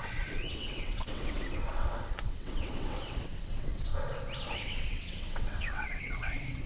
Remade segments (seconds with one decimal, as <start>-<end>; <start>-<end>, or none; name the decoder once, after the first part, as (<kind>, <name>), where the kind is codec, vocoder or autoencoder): 0.0-3.9 (vocoder, WaveNeXt); 4.5-6.7